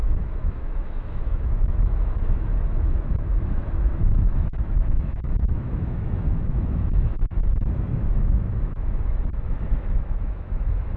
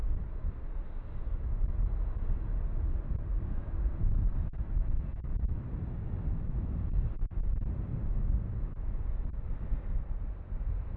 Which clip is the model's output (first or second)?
first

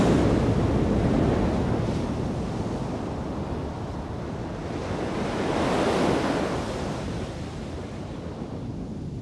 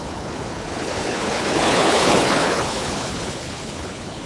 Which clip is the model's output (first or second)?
second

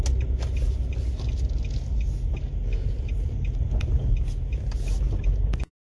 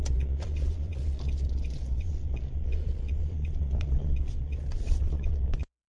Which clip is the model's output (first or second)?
second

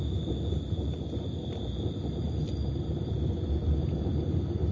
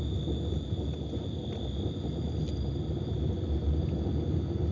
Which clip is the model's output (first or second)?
first